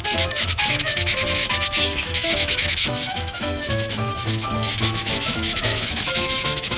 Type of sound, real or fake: fake